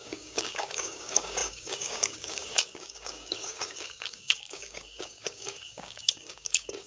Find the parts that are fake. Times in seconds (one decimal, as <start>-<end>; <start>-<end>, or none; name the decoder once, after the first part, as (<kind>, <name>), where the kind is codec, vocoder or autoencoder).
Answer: 0.0-6.9 (codec, DAC)

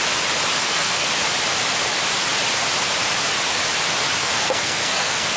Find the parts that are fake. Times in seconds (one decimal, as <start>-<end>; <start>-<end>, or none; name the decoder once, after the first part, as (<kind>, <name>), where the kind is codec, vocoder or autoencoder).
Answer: 0.6-1.1 (codec, SNAC); 4.2-5.4

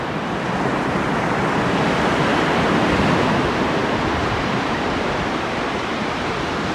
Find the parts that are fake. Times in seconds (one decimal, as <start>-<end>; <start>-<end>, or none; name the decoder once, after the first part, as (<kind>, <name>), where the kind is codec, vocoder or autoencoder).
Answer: 2.3-2.9 (vocoder, BigVGAN v2); 4.2-5.8